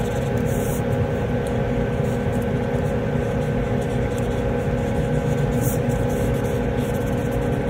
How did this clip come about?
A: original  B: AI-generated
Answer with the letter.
A